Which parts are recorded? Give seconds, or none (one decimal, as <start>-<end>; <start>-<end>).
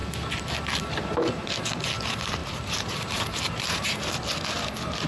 0.0-2.4; 4.2-5.1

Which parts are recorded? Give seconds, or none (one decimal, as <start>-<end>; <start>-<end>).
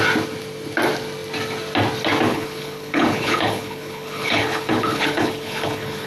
0.0-2.3